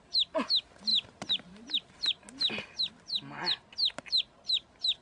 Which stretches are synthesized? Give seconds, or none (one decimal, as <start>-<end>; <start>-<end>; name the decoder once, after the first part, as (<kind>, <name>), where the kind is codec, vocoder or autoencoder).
none